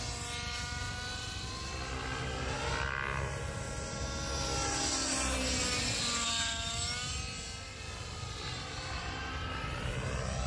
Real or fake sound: real